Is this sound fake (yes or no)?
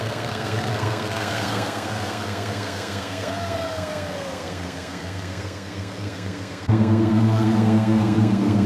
yes